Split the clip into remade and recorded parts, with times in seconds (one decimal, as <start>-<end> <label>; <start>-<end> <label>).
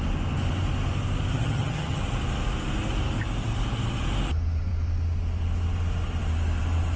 0.0-1.3 recorded; 1.3-2.0 remade; 2.0-7.0 recorded